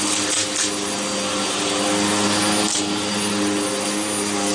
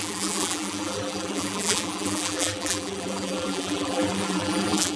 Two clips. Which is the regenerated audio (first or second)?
second